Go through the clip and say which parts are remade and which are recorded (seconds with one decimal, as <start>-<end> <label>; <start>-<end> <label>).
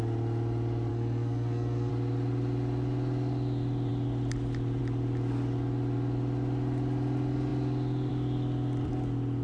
0.0-0.9 recorded; 0.9-1.9 remade; 1.9-9.4 recorded